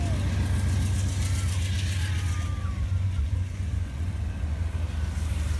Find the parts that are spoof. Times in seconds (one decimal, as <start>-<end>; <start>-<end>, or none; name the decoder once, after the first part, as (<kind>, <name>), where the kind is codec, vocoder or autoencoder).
2.6-4.6 (vocoder, Vocos)